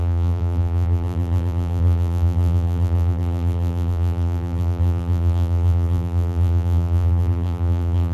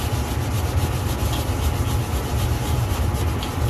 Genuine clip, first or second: second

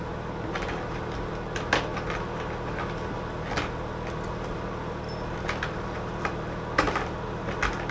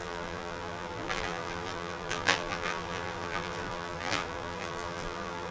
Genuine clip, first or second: first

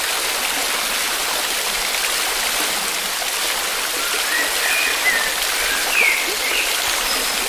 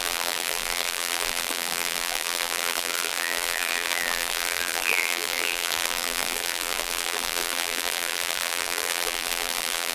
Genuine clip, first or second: first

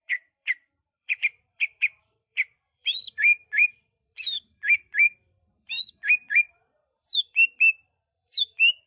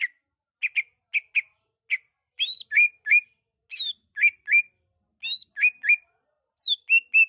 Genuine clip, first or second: second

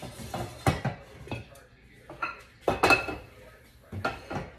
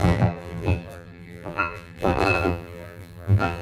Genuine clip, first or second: first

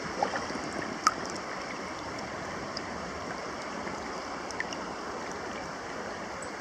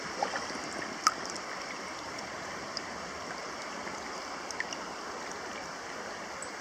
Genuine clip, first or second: second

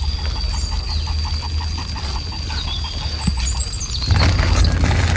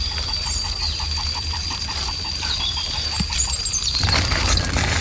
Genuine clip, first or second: first